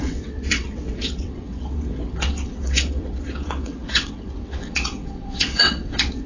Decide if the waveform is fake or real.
fake